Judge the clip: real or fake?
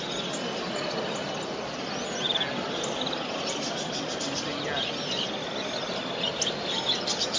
real